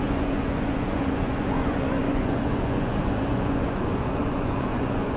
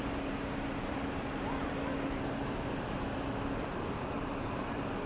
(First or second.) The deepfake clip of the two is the first